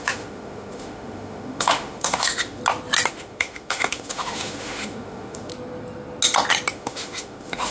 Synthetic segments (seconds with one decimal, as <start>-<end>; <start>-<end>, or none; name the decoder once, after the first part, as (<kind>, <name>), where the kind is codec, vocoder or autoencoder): 0.0-2.6 (autoencoder, DAC-VAE); 3.1-5.5; 6.7-7.7